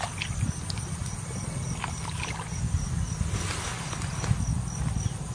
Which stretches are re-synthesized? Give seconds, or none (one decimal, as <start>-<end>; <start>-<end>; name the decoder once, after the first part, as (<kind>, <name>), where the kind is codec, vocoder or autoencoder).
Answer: none